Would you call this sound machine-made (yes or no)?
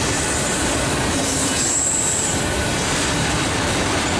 yes